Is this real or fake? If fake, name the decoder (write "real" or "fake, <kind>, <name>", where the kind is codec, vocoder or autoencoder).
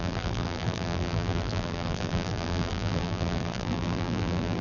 fake, vocoder, BigVGAN v2